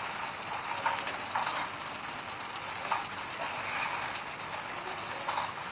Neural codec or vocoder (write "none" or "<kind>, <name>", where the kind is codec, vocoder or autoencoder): none